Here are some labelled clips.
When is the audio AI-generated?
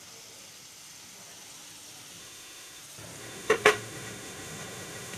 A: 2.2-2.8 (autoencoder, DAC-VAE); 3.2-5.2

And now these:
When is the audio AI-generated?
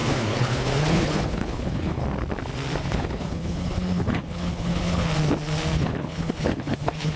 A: 0.0-2.0 (codec, HILCodec); 2.8-5.1; 5.7-7.2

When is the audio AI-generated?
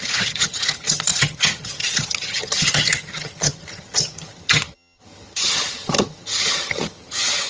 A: 0.0-7.5 (vocoder, HiFi-GAN)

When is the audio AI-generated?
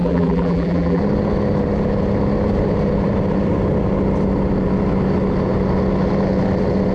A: 0.0-1.0 (vocoder, BigVGAN v2)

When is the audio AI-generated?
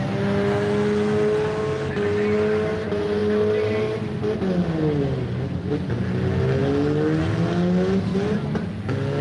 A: none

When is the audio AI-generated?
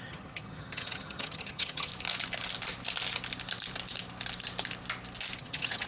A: 0.0-1.9 (vocoder, HiFi-GAN); 5.4-5.9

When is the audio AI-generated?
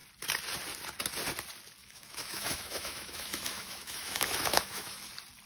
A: 1.8-5.1 (autoencoder, DAC-VAE)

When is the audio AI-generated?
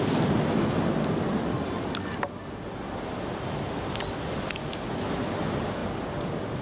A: none